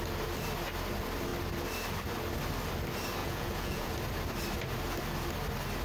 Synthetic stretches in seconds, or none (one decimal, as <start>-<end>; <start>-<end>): 3.2-3.9